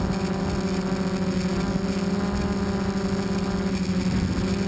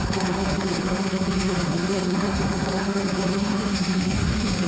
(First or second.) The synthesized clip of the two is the second